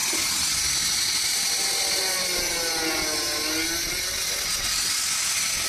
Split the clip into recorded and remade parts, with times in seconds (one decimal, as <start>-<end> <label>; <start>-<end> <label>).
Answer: 0.0-5.7 recorded